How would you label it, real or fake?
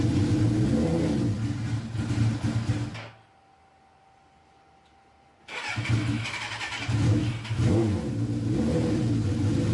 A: real